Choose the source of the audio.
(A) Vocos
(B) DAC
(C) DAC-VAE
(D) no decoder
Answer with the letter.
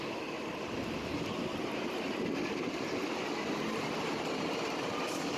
D